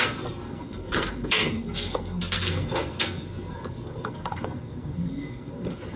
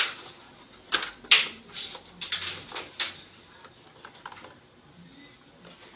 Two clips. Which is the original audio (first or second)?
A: second